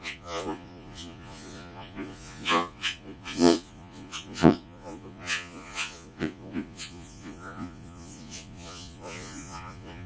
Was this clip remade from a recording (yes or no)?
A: yes